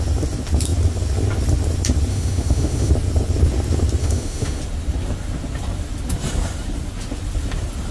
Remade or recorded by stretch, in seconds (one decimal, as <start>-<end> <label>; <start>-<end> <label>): 0.0-2.1 recorded; 2.1-2.9 remade; 2.9-4.0 recorded; 4.0-4.6 remade; 4.6-7.9 recorded